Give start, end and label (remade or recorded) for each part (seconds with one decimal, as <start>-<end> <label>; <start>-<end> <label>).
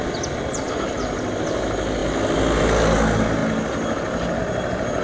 0.0-5.0 recorded